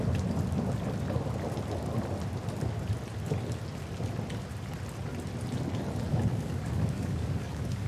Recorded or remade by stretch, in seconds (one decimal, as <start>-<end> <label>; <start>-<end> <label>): 0.0-6.1 recorded; 6.1-7.9 remade